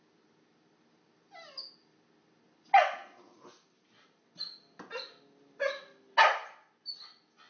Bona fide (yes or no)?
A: yes